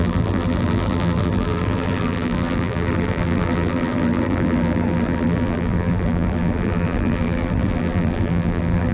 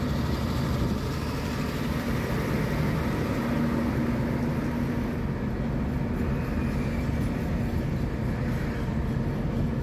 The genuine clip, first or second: second